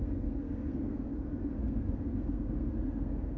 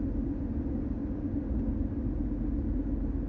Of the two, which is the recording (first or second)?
second